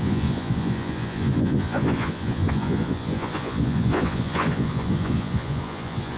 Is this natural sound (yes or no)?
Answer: no